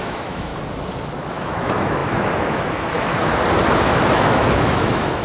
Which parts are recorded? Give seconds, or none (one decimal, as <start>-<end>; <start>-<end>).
0.5-1.3; 3.3-3.9